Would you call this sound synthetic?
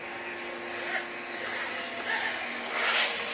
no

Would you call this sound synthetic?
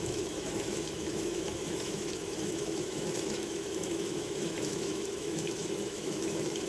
yes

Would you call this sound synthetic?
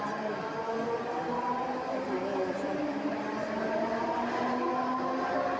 no